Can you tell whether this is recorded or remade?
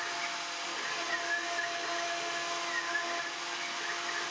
recorded